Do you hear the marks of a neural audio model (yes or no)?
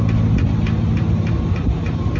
no